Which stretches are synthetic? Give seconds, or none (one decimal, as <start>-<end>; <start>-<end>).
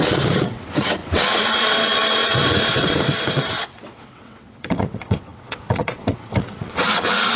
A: 0.0-7.4